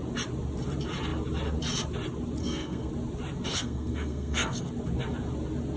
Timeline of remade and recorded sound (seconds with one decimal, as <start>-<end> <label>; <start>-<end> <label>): 0.0-2.4 recorded; 2.4-2.9 remade; 2.9-3.5 recorded; 3.5-4.7 remade; 4.7-5.8 recorded